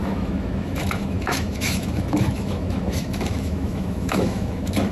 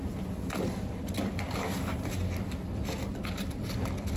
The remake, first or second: first